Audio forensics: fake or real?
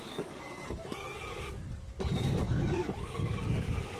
fake